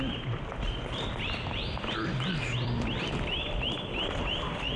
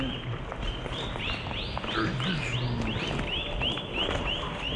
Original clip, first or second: second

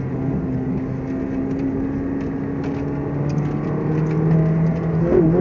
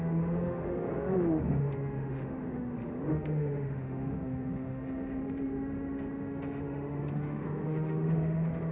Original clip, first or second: first